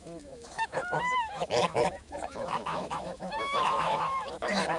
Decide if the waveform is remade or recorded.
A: remade